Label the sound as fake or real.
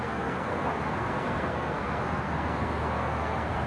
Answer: fake